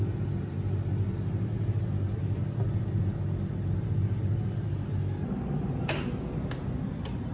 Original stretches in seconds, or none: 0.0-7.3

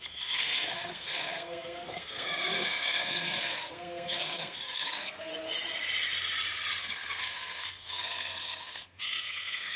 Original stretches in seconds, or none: 5.3-6.8

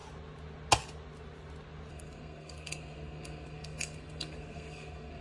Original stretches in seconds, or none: 0.0-1.9

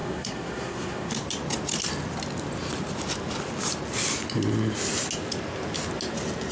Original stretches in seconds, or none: 1.1-6.5

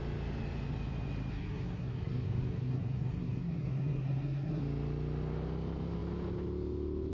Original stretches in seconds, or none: 0.0-1.3; 4.6-7.1

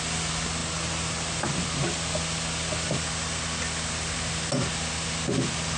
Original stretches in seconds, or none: 0.0-5.8

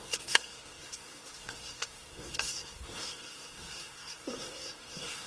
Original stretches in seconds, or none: none

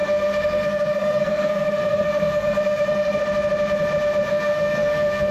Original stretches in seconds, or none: 3.2-4.3